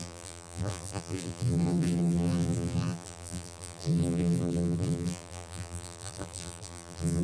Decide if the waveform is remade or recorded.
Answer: remade